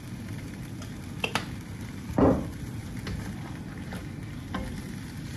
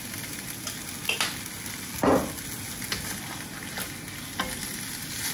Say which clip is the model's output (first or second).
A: first